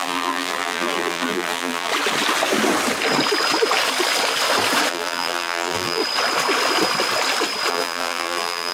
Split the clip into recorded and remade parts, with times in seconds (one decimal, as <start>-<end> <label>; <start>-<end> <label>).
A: 0.0-1.9 remade; 1.9-4.9 recorded; 4.9-6.0 remade; 6.0-7.7 recorded; 7.7-8.7 remade